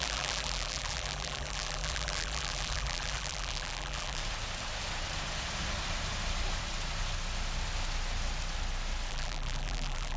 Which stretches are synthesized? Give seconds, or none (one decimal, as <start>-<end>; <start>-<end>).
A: 0.0-4.2; 9.1-10.2